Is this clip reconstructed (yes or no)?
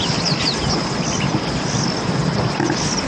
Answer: no